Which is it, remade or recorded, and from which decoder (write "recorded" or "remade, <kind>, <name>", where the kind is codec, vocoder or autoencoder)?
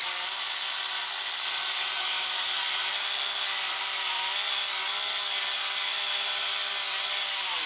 recorded